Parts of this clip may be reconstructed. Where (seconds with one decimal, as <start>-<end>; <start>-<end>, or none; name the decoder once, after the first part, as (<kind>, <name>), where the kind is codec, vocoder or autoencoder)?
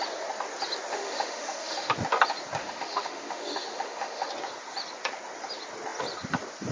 0.9-1.9 (autoencoder, DAC-VAE); 2.6-4.3